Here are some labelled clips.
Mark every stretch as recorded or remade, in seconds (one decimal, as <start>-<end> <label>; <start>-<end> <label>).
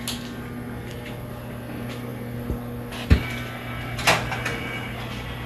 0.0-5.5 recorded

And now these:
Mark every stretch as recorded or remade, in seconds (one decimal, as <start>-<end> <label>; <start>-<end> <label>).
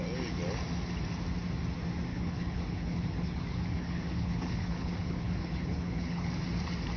0.0-2.1 recorded; 2.1-6.3 remade; 6.3-7.0 recorded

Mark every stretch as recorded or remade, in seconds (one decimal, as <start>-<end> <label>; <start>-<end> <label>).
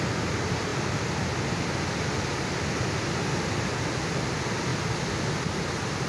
0.0-6.1 recorded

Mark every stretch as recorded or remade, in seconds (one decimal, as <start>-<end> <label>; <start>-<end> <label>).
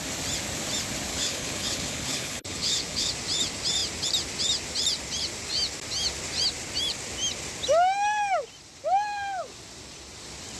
0.0-1.1 recorded; 1.1-3.1 remade; 3.1-10.6 recorded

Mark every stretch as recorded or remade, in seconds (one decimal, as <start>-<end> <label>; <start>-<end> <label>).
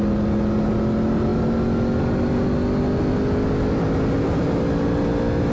0.0-5.5 recorded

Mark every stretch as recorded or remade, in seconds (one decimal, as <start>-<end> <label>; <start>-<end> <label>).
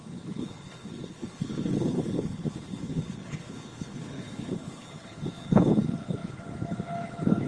0.0-7.5 remade